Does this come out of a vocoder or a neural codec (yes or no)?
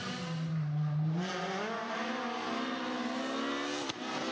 no